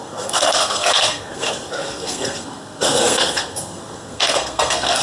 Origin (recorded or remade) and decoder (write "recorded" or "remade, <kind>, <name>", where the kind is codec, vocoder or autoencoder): remade, codec, SNAC